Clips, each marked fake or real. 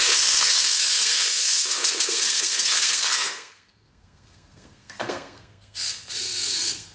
fake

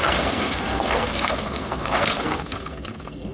fake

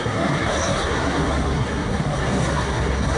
fake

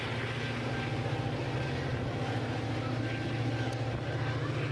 real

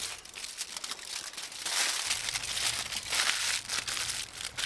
real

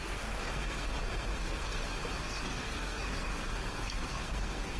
fake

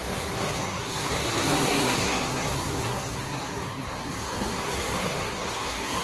fake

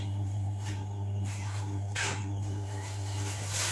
fake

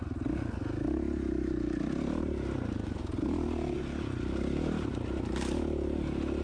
real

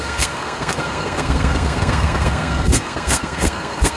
fake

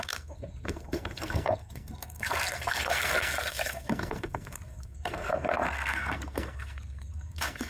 fake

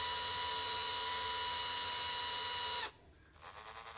real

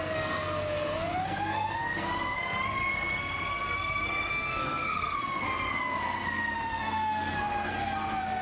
fake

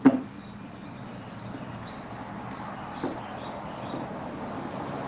real